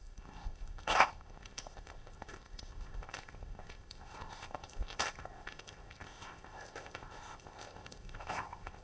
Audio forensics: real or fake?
fake